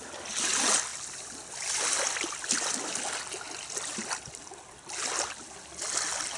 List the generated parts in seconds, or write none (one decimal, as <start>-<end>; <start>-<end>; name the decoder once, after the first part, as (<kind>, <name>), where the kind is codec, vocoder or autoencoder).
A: none